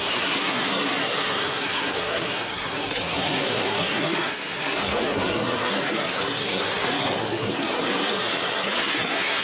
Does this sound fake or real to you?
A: fake